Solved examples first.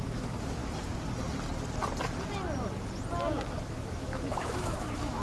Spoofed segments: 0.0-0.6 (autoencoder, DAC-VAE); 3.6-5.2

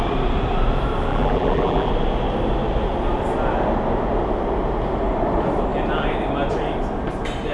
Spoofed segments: 1.1-1.9 (vocoder, BigVGAN v2)